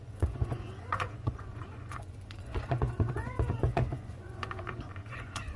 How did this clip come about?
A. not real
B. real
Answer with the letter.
A